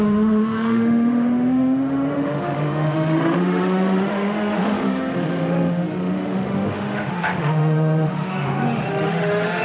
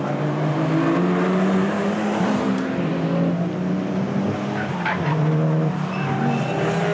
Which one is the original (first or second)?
second